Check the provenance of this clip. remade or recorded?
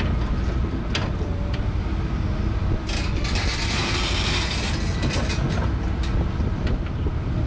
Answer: recorded